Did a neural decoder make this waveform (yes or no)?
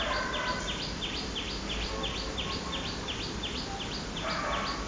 no